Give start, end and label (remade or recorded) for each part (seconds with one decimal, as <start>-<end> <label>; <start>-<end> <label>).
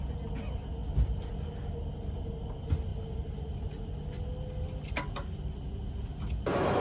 0.0-6.8 recorded